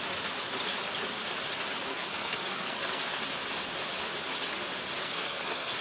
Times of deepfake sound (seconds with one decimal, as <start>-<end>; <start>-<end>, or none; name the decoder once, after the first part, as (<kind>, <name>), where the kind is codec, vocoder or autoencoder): 1.9-3.2 (codec, SNAC); 5.0-5.8